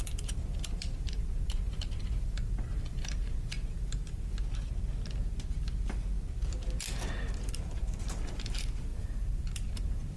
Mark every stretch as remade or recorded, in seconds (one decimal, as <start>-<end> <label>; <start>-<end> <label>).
0.0-4.3 remade; 4.3-7.5 recorded; 7.5-10.2 remade